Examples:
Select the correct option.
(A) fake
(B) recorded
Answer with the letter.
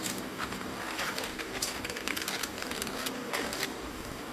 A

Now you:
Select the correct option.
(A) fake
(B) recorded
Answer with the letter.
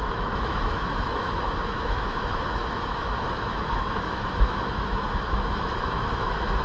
A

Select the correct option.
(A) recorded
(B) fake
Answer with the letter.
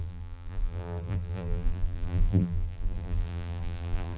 B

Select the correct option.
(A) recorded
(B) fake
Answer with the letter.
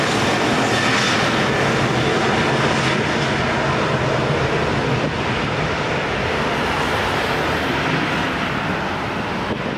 A